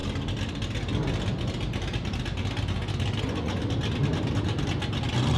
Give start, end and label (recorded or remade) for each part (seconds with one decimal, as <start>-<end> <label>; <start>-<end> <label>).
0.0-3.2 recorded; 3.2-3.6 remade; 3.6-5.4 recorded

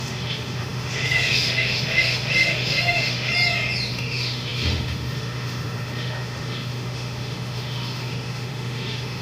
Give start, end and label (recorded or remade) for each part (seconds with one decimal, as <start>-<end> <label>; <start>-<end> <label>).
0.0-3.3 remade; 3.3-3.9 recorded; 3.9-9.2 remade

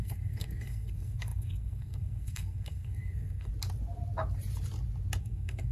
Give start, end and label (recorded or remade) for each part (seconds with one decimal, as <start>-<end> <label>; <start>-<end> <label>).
0.0-3.5 remade; 3.5-5.2 recorded; 5.2-5.7 remade

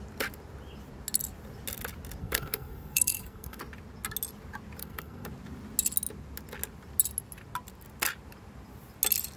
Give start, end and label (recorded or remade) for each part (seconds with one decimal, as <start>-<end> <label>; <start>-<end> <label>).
0.0-2.2 recorded; 2.2-3.6 remade; 3.6-4.8 recorded; 4.8-5.3 remade; 5.3-9.4 recorded

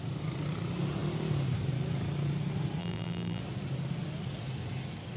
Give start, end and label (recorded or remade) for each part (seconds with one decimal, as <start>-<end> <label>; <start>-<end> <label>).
0.0-2.8 recorded; 2.8-3.4 remade; 3.4-5.2 recorded

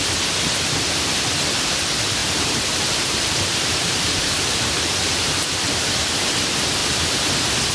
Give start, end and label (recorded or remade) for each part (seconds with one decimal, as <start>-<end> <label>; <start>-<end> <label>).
0.0-2.2 recorded; 2.2-5.3 remade; 5.3-7.7 recorded